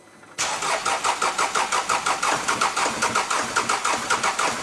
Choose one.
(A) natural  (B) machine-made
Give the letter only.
A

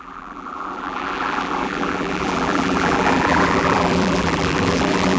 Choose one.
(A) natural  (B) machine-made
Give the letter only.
B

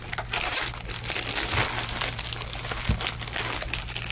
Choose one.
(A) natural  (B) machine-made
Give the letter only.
A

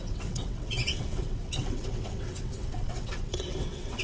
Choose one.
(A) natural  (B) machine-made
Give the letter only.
B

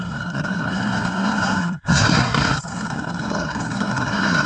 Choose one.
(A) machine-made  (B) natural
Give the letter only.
A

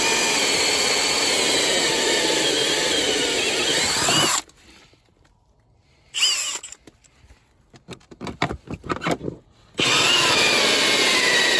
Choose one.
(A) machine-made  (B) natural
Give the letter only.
B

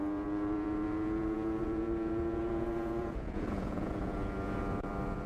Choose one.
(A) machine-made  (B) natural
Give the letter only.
A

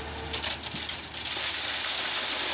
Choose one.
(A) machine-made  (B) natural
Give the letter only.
B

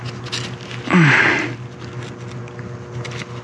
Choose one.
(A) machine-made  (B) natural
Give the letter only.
B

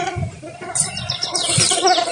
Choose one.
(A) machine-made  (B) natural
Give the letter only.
B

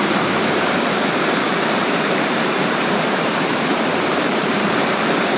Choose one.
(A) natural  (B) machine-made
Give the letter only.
B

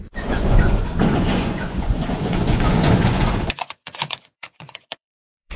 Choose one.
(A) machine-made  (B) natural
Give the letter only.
A